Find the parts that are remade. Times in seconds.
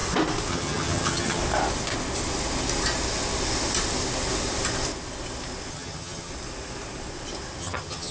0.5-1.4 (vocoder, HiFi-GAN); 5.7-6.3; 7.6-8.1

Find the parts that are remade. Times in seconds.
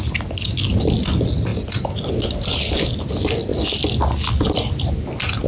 none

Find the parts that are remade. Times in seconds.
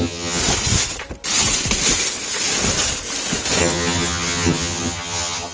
0.0-0.4 (vocoder, HiFi-GAN); 3.6-5.5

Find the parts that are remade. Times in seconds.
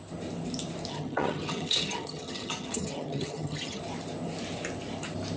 0.9-3.8 (vocoder, HiFi-GAN)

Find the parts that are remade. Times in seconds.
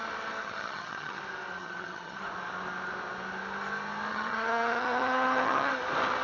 0.4-1.2 (vocoder, HiFi-GAN); 1.6-2.2; 4.1-5.7